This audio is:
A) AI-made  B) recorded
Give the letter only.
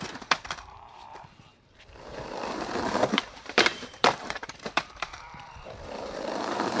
A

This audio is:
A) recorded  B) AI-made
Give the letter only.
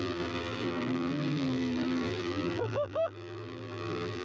B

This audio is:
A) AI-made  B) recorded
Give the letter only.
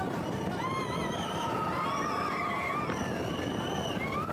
B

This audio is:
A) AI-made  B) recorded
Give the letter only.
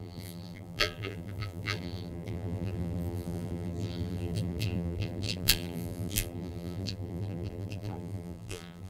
A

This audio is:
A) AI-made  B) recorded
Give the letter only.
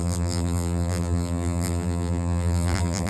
A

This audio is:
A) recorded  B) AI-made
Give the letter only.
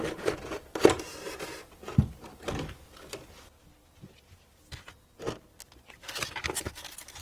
A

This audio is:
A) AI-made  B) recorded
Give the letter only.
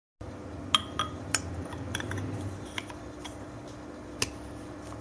B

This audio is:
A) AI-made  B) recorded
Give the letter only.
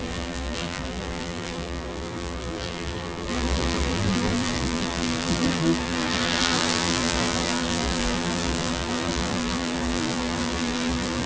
A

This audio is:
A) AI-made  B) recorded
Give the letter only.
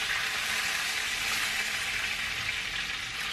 B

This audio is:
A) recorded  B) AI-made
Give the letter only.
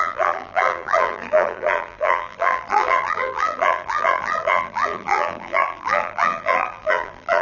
B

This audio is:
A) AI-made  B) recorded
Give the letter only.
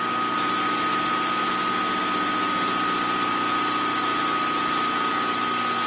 B